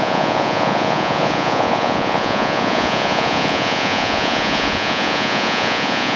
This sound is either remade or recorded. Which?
remade